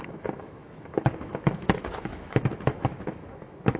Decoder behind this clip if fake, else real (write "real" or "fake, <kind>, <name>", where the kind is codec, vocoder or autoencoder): fake, autoencoder, DAC-VAE